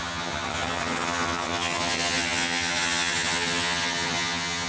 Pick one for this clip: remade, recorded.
remade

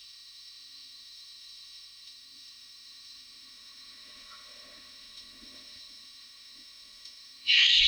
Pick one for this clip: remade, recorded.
remade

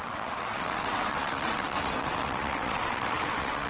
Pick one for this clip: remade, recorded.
remade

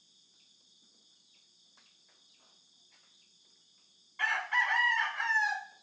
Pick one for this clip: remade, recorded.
recorded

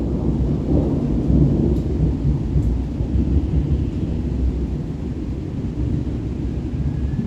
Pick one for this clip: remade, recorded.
recorded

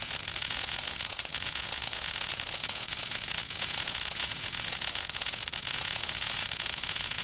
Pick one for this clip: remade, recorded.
remade